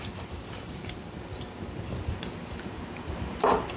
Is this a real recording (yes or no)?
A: no